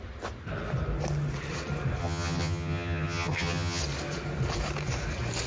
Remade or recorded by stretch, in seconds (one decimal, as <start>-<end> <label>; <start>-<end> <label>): 0.0-2.0 recorded; 2.0-3.8 remade; 3.8-5.5 recorded